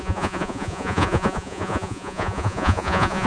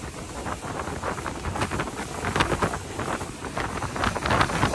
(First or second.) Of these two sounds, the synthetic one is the first